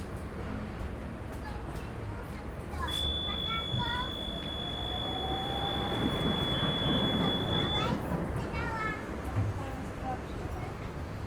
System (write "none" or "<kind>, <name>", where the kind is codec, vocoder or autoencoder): none